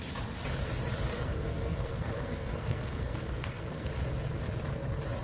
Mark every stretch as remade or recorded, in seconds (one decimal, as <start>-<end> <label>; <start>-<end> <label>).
0.0-1.1 recorded; 1.1-3.9 remade; 3.9-5.2 recorded